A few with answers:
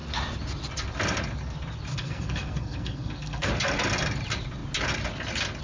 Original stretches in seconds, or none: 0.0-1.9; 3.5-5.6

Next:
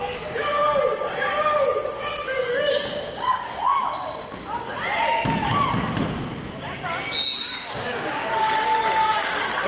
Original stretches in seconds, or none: 0.6-1.1; 3.7-7.7

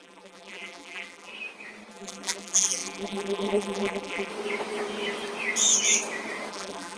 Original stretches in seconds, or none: 1.3-1.9; 4.3-6.5

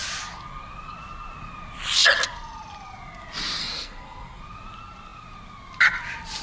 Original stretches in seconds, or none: 0.0-3.6; 4.4-6.4

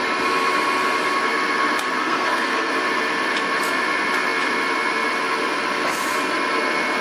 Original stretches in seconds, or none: 0.0-2.0; 2.7-7.0